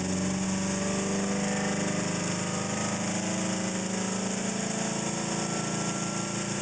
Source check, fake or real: real